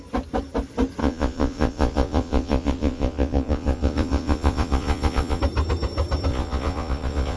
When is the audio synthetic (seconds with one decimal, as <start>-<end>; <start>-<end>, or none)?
1.0-5.4; 6.3-7.4